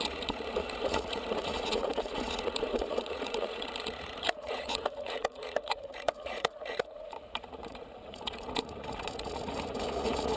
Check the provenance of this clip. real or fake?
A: fake